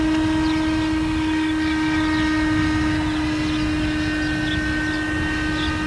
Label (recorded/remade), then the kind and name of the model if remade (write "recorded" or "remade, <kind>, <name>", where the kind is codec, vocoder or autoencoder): recorded